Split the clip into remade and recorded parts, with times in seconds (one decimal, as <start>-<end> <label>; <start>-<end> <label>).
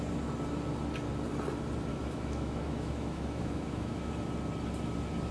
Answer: 0.0-1.9 recorded; 1.9-4.1 remade; 4.1-5.3 recorded